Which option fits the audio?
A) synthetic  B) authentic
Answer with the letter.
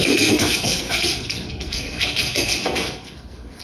A